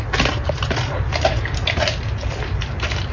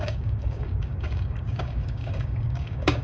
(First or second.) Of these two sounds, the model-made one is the second